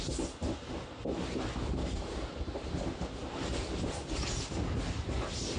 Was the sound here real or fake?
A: real